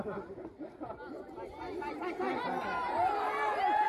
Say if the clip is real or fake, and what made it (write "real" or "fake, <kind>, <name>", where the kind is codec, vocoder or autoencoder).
real